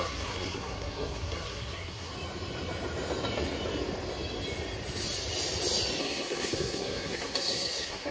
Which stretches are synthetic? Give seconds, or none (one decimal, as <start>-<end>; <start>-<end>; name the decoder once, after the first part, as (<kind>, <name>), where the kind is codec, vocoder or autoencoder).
0.0-2.1 (codec, SNAC); 6.0-8.1